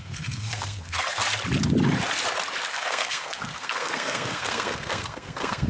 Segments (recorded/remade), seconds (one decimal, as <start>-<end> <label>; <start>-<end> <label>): 0.0-1.2 remade; 1.2-2.7 recorded; 2.7-5.7 remade